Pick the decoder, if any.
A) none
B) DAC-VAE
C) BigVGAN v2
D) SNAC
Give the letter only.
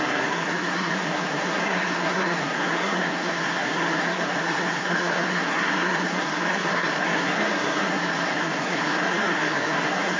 D